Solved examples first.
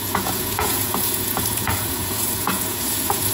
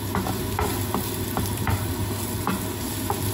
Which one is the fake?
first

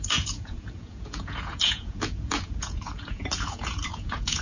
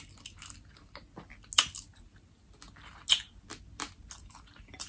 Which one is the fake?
first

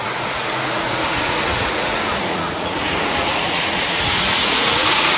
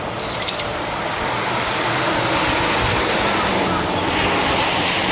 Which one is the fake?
first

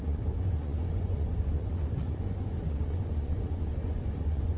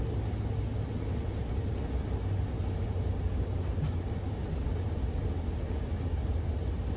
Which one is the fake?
first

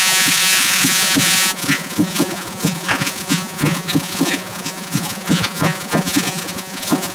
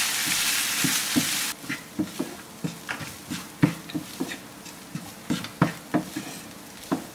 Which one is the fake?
first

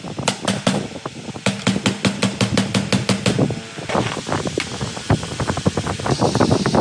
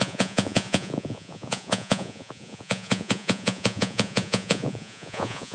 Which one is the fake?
second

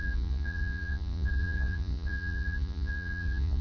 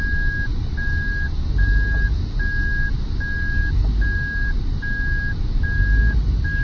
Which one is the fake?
first